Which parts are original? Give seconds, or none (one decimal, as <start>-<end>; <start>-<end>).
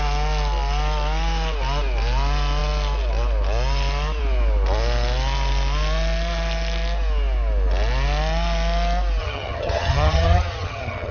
0.0-9.2